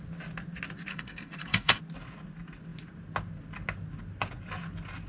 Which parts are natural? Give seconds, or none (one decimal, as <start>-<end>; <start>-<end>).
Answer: 0.0-0.9; 1.8-5.1